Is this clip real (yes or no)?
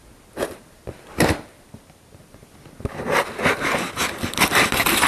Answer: yes